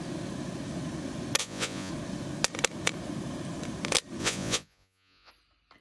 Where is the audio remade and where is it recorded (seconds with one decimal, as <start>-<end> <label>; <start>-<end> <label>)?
0.0-1.4 recorded; 1.4-1.9 remade; 1.9-4.2 recorded; 4.2-5.3 remade; 5.3-5.8 recorded

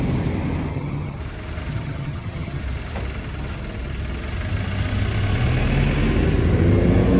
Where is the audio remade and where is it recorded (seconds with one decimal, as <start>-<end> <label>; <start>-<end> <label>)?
0.0-0.7 recorded; 0.7-1.2 remade; 1.2-1.7 recorded; 1.7-2.6 remade; 2.6-7.2 recorded

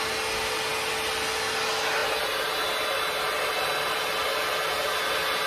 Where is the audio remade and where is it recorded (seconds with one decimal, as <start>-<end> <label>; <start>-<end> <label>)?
0.0-5.5 recorded